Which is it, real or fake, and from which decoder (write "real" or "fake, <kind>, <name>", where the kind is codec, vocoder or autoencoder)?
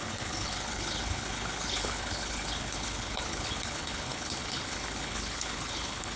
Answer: fake, codec, HILCodec